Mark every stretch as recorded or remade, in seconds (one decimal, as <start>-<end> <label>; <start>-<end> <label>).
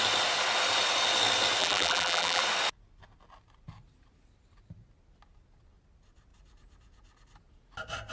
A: 0.0-1.6 recorded; 1.6-2.4 remade; 2.4-8.1 recorded